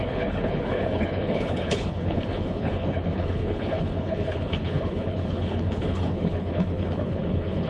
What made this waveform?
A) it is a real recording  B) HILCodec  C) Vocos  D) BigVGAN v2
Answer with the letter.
B